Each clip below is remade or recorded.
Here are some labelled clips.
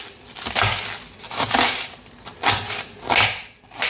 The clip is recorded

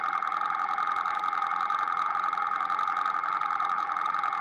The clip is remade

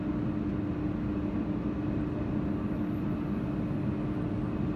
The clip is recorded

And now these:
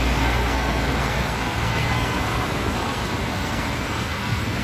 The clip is remade